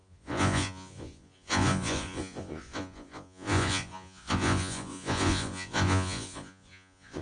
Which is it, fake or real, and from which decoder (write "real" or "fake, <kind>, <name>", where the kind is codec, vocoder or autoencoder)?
fake, vocoder, Vocos